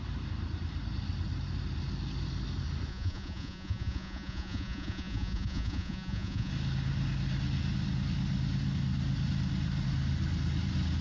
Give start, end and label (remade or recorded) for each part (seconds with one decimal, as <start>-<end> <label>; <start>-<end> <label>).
0.0-2.9 recorded; 2.9-6.5 remade; 6.5-11.0 recorded